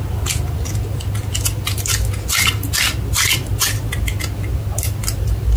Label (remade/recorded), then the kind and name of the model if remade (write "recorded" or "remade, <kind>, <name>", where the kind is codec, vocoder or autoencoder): recorded